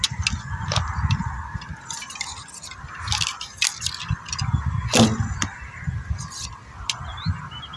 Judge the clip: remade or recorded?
recorded